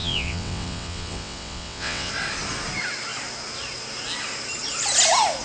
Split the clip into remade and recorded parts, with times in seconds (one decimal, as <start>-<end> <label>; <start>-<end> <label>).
0.0-2.1 remade; 2.1-5.4 recorded